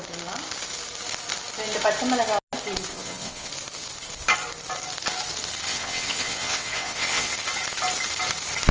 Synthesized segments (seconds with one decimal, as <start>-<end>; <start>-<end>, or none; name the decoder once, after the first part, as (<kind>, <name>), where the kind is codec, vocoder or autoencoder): 2.9-3.5 (vocoder, WaveNeXt); 5.7-7.3